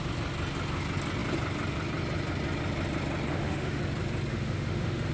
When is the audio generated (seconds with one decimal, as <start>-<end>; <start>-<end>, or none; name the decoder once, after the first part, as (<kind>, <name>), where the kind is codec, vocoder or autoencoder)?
3.3-3.8 (autoencoder, DAC-VAE); 4.3-5.1